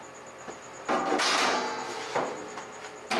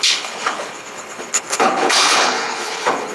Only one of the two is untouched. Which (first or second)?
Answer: first